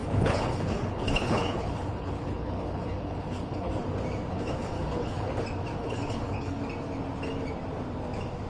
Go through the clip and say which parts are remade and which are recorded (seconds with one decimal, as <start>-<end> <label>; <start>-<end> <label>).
0.0-3.7 remade; 3.7-4.3 recorded; 4.3-5.3 remade; 5.3-5.8 recorded; 5.8-6.6 remade; 6.6-8.5 recorded